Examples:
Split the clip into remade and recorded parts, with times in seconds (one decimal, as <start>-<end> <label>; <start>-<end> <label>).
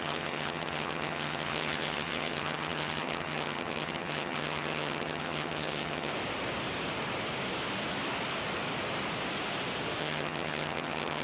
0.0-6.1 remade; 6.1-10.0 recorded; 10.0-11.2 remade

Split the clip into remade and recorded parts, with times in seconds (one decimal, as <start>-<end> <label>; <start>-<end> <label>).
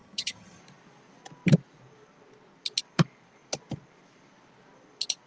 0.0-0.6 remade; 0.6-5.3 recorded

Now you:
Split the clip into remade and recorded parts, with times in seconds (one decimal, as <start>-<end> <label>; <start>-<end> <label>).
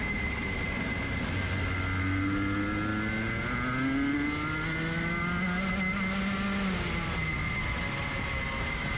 0.0-9.0 recorded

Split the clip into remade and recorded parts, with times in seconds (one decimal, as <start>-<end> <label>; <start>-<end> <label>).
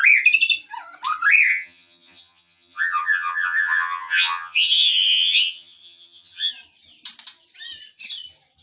0.0-1.5 recorded; 1.5-6.5 remade; 6.5-8.6 recorded